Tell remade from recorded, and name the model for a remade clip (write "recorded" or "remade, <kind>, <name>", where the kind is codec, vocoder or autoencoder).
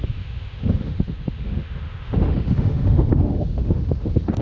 remade, autoencoder, DAC-VAE